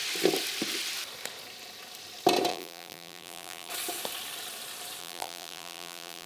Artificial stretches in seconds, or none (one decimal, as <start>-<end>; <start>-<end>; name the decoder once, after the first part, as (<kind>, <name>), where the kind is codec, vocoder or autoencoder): 2.5-3.7 (vocoder, BigVGAN v2); 5.0-6.3